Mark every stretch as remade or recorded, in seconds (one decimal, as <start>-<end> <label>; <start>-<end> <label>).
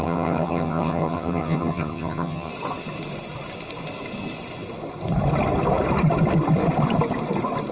0.0-2.5 remade; 2.5-7.7 recorded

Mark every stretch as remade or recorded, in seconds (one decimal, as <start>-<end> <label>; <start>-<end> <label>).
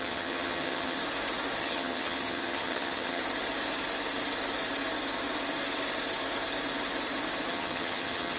0.0-1.0 remade; 1.0-1.6 recorded; 1.6-3.2 remade; 3.2-7.5 recorded; 7.5-8.4 remade